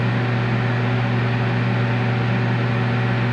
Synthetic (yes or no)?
no